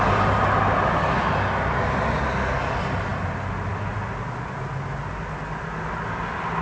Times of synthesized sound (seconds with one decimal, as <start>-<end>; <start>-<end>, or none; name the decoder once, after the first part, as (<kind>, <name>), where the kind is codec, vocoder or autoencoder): none